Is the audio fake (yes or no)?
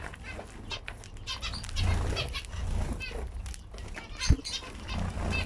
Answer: no